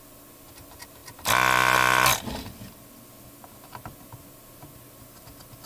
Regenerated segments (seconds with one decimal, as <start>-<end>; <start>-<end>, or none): none